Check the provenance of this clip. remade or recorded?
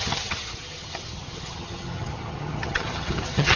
remade